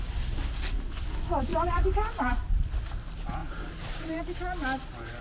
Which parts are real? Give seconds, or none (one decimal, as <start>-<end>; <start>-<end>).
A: 0.0-1.5; 2.9-3.4; 4.2-5.2